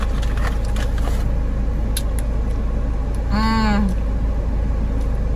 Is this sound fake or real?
real